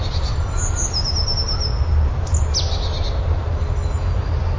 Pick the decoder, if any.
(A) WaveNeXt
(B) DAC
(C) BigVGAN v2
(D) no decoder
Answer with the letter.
D